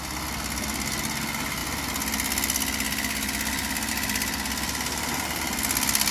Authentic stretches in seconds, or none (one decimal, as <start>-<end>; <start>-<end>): 0.0-6.1